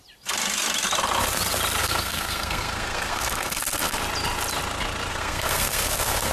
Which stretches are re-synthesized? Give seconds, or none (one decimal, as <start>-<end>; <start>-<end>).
1.8-4.0; 5.1-6.3